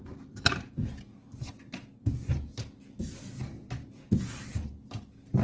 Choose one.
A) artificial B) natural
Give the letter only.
B